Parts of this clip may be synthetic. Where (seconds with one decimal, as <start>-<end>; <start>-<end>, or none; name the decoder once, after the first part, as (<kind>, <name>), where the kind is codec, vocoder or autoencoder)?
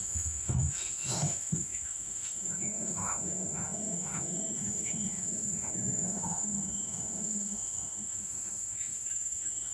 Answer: 0.0-9.7 (autoencoder, DAC-VAE)